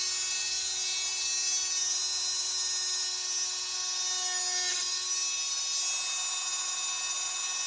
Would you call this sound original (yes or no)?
yes